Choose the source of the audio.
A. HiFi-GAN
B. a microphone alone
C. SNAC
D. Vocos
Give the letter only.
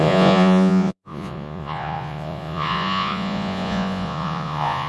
D